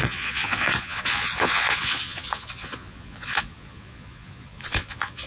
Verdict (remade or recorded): remade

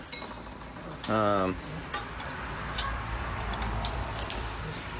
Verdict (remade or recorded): remade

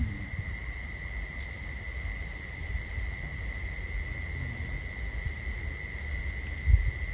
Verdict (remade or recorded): recorded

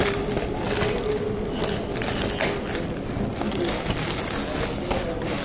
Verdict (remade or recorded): recorded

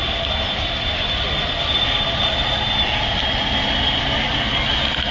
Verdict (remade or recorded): recorded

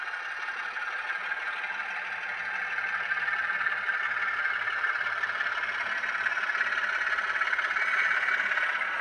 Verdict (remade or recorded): recorded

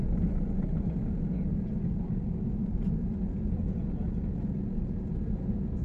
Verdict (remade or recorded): recorded